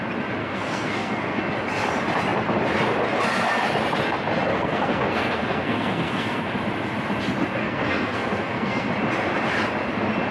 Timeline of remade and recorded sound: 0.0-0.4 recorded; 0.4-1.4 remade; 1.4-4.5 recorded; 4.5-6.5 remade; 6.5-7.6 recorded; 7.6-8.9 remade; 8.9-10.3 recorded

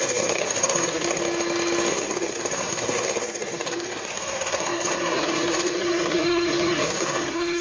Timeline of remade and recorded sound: 0.0-1.2 remade; 1.2-1.9 recorded; 1.9-7.6 remade